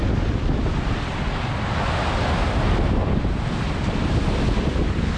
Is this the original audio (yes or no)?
yes